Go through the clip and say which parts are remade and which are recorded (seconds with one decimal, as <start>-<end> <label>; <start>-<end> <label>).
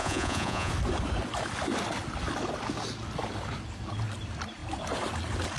0.0-0.7 remade; 0.7-5.6 recorded